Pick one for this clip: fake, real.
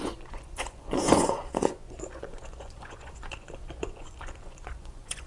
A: fake